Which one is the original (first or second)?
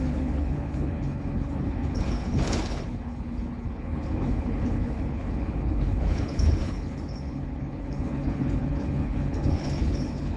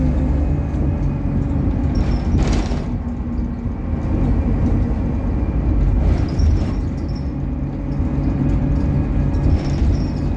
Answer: second